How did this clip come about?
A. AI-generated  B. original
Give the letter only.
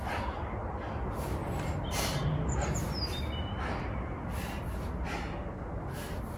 B